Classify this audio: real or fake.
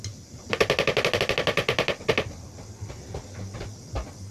real